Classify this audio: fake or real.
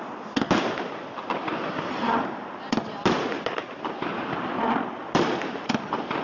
fake